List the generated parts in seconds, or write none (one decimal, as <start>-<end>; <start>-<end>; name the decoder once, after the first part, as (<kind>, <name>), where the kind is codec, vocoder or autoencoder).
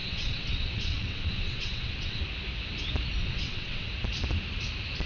0.0-2.2 (vocoder, WaveNeXt); 3.2-3.9